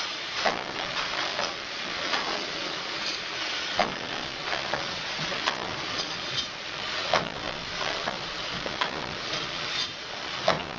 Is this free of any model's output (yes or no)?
no